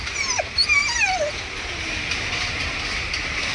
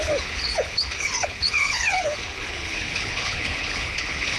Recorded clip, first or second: first